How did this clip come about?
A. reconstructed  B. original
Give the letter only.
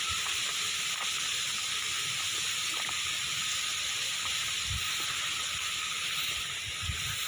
B